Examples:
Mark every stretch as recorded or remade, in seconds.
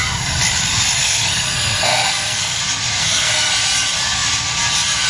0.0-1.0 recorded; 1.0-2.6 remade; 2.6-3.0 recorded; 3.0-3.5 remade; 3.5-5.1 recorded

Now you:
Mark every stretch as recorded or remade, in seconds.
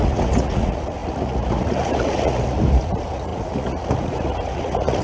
0.0-5.0 remade